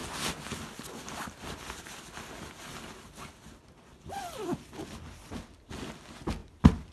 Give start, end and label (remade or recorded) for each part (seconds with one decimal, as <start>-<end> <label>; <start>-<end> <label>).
0.0-6.4 recorded; 6.4-6.9 remade